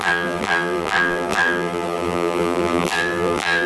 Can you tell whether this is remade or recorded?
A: remade